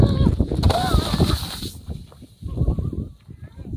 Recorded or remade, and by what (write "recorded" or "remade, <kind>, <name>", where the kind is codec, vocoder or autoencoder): remade, vocoder, BigVGAN v2